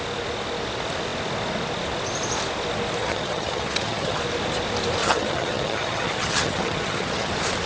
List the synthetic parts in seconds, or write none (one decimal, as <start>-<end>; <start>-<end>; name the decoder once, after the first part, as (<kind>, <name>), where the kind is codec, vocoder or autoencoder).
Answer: 3.0-4.2 (vocoder, HiFi-GAN); 5.0-7.3